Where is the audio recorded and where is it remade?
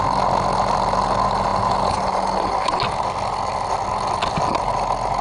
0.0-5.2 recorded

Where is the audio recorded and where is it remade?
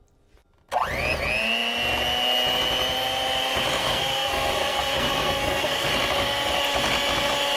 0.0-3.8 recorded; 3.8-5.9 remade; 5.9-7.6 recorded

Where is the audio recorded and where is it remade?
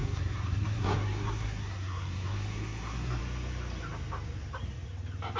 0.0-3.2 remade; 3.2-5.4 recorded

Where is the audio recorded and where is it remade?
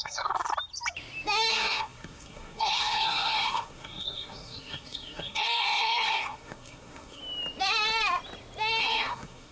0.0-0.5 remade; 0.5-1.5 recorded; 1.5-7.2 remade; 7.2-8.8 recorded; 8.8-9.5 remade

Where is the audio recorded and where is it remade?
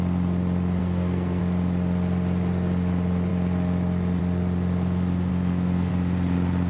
0.0-0.8 recorded; 0.8-1.4 remade; 1.4-5.3 recorded; 5.3-5.9 remade; 5.9-6.7 recorded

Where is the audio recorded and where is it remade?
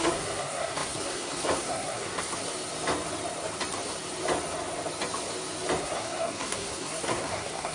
0.0-2.3 remade; 2.3-5.8 recorded; 5.8-7.7 remade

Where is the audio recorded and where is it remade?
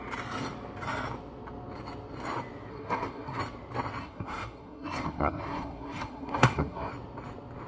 0.0-2.7 recorded; 2.7-3.4 remade; 3.4-4.0 recorded; 4.0-6.9 remade; 6.9-7.7 recorded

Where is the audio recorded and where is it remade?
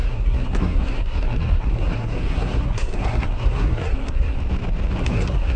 0.0-4.4 remade; 4.4-5.0 recorded; 5.0-5.6 remade